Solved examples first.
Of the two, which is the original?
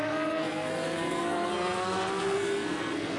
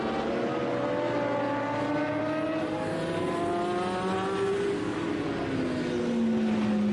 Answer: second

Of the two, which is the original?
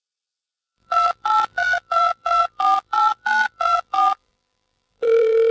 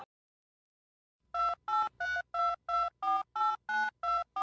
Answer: second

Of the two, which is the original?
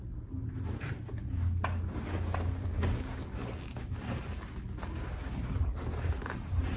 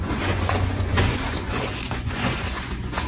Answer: first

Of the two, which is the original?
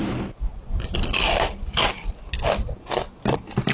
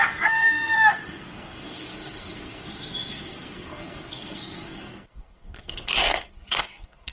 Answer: first